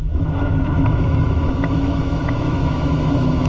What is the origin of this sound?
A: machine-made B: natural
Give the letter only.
A